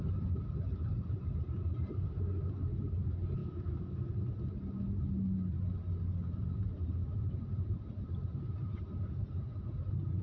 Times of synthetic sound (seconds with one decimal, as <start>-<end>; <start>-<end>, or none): 3.4-4.0